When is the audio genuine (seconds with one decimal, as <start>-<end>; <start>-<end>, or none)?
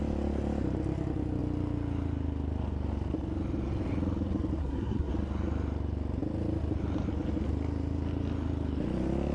0.0-4.6; 5.1-9.3